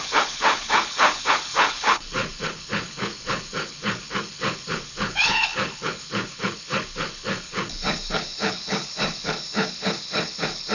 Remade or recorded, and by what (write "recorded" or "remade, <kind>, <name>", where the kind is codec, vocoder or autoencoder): remade, codec, HILCodec